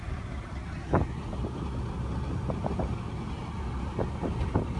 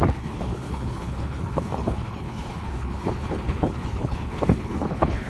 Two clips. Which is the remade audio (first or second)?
second